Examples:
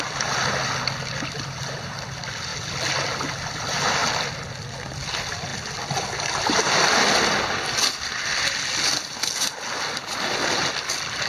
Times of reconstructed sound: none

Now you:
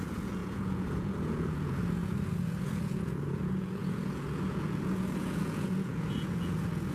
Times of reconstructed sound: 0.0-6.9 (vocoder, Vocos)

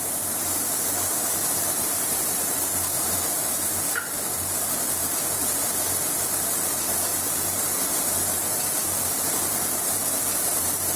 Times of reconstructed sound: 0.0-11.0 (vocoder, BigVGAN v2)

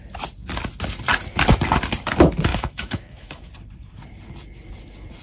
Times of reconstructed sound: 2.5-3.5 (autoencoder, DAC-VAE)